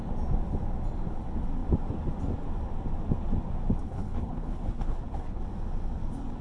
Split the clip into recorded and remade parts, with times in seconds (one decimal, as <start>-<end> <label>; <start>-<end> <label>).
0.0-3.8 recorded; 3.8-5.4 remade; 5.4-6.4 recorded